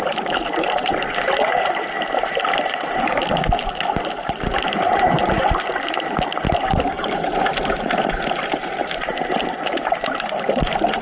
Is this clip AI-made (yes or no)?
no